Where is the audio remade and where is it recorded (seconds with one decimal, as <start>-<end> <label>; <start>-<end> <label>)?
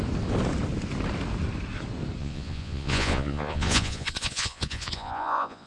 0.0-2.2 recorded; 2.2-5.7 remade